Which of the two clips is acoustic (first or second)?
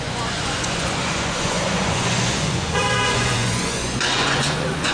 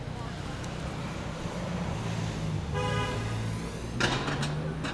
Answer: second